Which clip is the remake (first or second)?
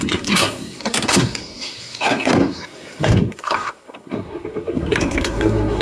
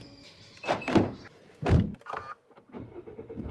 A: first